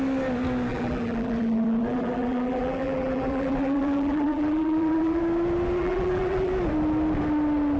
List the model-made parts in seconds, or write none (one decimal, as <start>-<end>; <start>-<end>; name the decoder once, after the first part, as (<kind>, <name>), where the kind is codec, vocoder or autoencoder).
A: 0.7-5.2 (vocoder, BigVGAN v2); 5.8-6.5